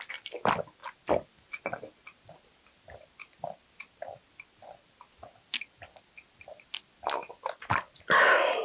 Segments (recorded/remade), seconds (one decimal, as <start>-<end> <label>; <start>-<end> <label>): 0.0-8.6 recorded